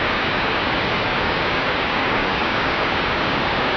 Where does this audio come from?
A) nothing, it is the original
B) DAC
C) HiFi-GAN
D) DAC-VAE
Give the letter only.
B